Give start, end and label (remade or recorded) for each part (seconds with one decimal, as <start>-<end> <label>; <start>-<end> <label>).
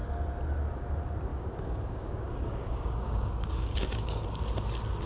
0.0-1.3 recorded; 1.3-4.4 remade; 4.4-5.1 recorded